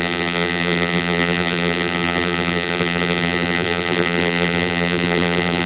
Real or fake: fake